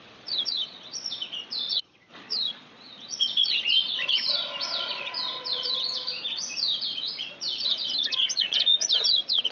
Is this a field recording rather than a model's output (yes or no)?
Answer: no